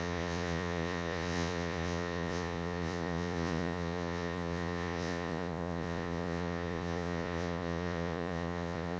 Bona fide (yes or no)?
no